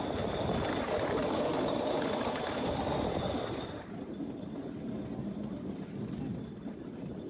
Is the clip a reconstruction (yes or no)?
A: no